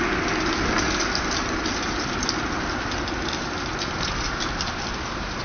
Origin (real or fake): real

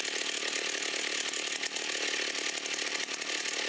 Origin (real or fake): real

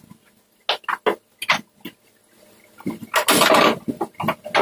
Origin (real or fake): real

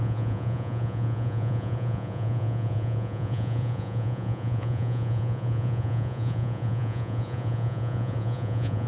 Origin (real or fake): fake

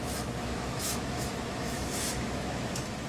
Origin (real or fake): fake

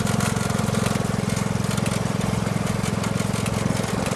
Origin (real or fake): real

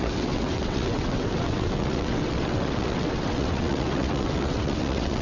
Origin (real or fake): fake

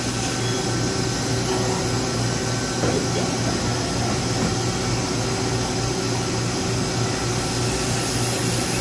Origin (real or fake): real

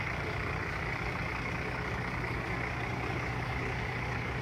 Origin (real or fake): fake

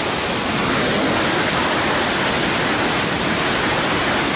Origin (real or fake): real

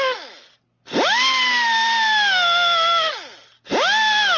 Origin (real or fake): real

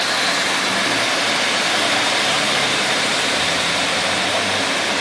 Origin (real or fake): fake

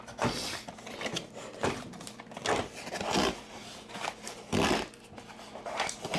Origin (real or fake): real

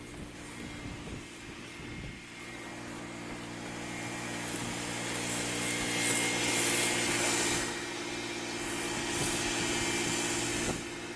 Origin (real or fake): real